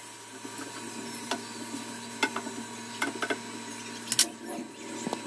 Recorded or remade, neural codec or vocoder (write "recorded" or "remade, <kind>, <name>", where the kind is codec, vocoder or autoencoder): recorded